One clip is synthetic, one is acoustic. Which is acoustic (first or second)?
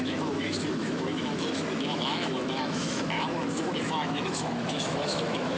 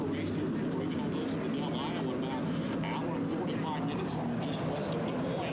second